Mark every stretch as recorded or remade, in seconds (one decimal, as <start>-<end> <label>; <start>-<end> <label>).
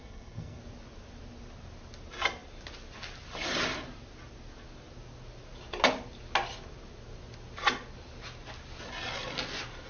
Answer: 0.0-0.6 remade; 0.6-9.9 recorded